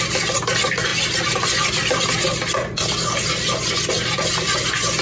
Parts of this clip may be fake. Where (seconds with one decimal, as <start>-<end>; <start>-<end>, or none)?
none